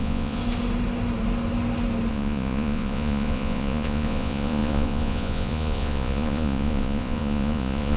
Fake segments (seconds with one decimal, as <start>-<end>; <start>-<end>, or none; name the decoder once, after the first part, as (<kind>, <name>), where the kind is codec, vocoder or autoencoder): 0.0-0.4 (vocoder, Vocos); 2.1-8.0